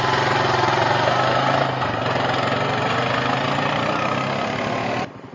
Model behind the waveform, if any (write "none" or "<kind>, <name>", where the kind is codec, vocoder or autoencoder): none